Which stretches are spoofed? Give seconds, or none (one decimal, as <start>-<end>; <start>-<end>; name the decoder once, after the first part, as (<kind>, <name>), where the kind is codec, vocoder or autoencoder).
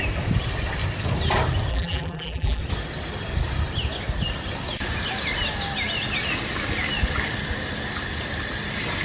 1.7-2.6 (vocoder, BigVGAN v2)